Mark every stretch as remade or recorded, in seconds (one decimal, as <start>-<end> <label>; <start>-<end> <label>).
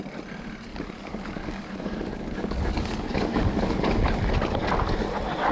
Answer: 0.0-0.7 recorded; 0.7-4.0 remade; 4.0-5.5 recorded